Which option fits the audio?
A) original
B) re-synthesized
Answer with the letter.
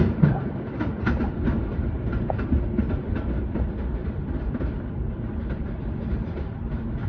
B